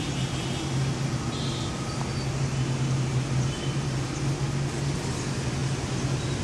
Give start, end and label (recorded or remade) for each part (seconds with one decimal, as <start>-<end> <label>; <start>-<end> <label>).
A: 0.0-6.4 recorded